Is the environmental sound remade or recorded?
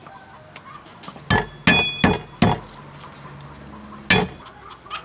recorded